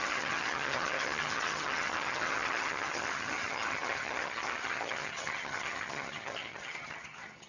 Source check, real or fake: fake